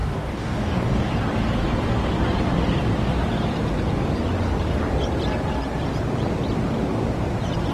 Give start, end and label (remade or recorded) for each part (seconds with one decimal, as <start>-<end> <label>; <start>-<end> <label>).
0.0-1.1 remade; 1.1-7.7 recorded